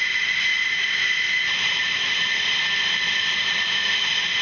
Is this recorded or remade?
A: recorded